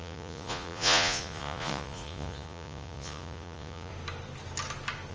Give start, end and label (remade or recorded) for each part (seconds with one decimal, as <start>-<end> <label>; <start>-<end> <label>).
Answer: 0.0-3.9 remade; 3.9-5.1 recorded